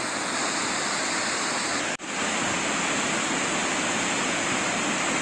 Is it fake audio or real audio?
real